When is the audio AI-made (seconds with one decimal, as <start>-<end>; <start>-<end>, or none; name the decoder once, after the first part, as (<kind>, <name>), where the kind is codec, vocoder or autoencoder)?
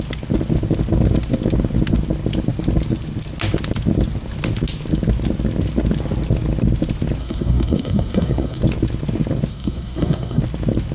7.2-8.6 (codec, SNAC); 9.5-10.4